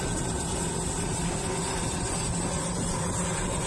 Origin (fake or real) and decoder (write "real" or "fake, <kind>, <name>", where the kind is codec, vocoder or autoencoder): real